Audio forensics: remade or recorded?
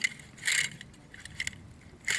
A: recorded